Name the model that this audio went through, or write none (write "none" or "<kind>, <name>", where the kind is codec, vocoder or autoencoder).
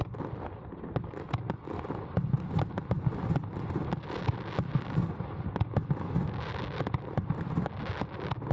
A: none